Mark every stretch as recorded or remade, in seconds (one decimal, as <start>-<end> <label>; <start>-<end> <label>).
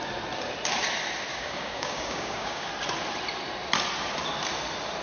0.0-1.3 recorded; 1.3-2.7 remade; 2.7-5.0 recorded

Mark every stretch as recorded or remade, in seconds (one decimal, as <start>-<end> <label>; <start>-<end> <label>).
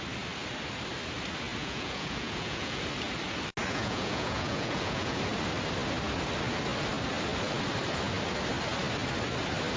0.0-1.6 recorded; 1.6-2.8 remade; 2.8-3.7 recorded; 3.7-5.2 remade; 5.2-9.8 recorded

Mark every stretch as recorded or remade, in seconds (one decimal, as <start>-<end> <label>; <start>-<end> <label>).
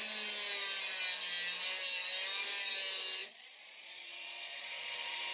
0.0-3.2 recorded; 3.2-5.3 remade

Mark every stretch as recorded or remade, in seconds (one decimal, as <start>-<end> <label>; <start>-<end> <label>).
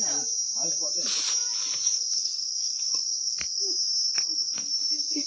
0.0-1.8 recorded; 1.8-3.6 remade; 3.6-4.1 recorded; 4.1-4.7 remade; 4.7-5.3 recorded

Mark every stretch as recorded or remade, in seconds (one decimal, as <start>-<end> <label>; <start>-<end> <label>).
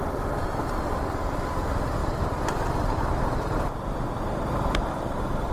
0.0-5.5 recorded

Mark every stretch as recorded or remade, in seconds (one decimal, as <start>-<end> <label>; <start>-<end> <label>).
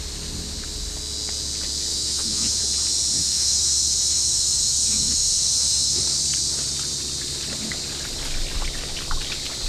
0.0-1.9 recorded; 1.9-2.6 remade; 2.6-3.2 recorded; 3.2-6.0 remade; 6.0-9.7 recorded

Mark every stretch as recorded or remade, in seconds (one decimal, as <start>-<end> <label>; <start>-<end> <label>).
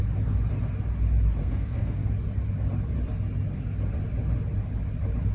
0.0-1.4 recorded; 1.4-2.1 remade; 2.1-5.3 recorded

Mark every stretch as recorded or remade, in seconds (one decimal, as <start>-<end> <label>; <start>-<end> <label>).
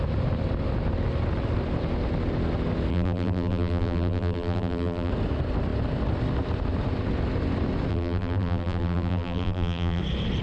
0.0-2.9 recorded; 2.9-5.1 remade; 5.1-7.9 recorded; 7.9-10.0 remade; 10.0-10.4 recorded